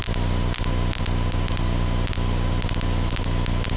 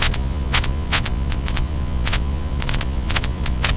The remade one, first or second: second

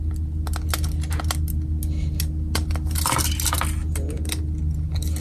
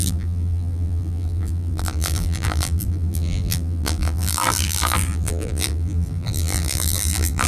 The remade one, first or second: second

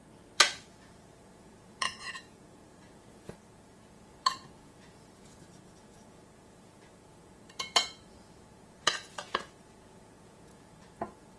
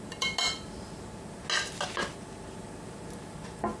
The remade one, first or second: first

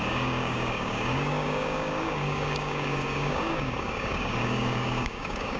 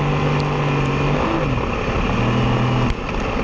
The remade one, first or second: first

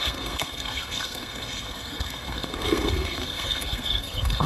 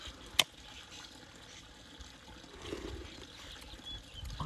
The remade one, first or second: first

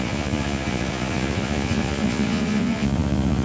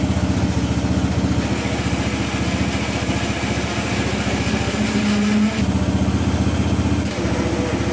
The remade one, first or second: first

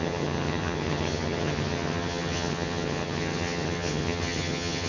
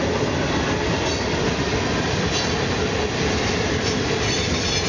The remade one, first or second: first